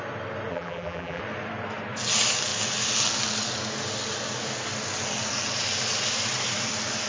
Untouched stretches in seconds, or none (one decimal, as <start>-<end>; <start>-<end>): 0.0-0.5; 1.2-7.1